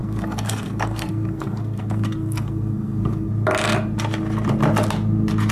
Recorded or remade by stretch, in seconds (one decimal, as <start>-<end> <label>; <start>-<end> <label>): 0.0-3.3 remade; 3.3-5.5 recorded